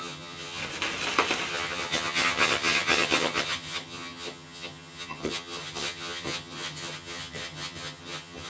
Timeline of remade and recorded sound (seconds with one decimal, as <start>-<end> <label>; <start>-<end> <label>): 0.0-0.6 remade; 0.6-1.5 recorded; 1.5-8.5 remade